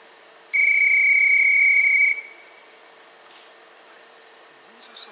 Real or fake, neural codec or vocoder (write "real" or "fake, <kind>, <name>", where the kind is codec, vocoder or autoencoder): fake, vocoder, BigVGAN v2